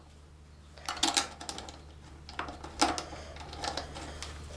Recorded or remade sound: recorded